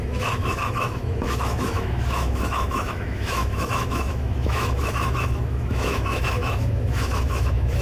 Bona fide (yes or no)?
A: no